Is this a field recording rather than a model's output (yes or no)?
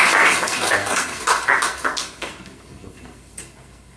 no